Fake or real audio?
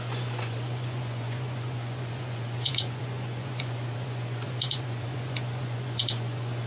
fake